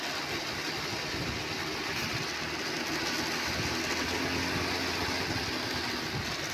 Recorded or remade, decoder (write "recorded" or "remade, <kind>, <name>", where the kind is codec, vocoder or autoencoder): recorded